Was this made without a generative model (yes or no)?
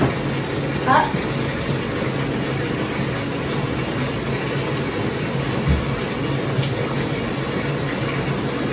yes